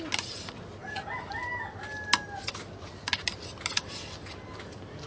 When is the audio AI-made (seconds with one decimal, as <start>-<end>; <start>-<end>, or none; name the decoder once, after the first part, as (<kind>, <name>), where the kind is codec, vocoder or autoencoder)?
none